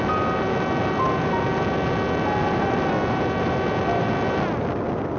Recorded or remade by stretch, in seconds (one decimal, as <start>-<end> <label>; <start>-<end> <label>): 0.0-5.2 recorded